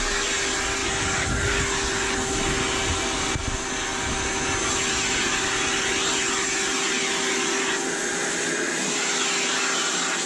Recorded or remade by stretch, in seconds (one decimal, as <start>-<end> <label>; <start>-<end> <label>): 0.0-0.8 recorded; 0.8-1.6 remade; 1.6-10.3 recorded